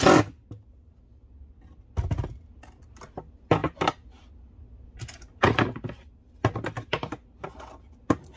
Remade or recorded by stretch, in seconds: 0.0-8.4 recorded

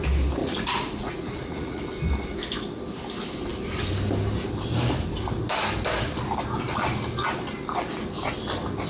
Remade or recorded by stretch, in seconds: 0.0-0.4 recorded; 0.4-1.8 remade; 1.8-8.9 recorded

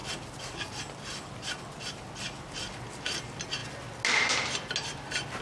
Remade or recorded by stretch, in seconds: 0.0-5.4 recorded

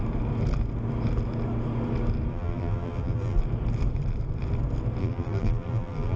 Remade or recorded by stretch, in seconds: 0.0-2.3 recorded; 2.3-3.4 remade; 3.4-5.0 recorded; 5.0-6.2 remade

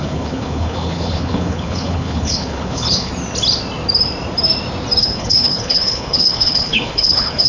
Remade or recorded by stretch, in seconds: 0.0-3.1 remade; 3.1-5.0 recorded; 5.0-7.5 remade

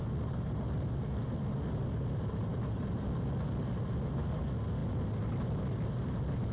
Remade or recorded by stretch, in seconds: 0.0-6.5 recorded